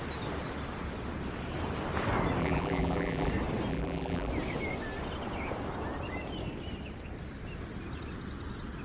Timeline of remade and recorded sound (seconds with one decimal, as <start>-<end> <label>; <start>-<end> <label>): 0.0-2.4 recorded; 2.4-3.3 remade; 3.3-3.7 recorded; 3.7-4.3 remade; 4.3-8.8 recorded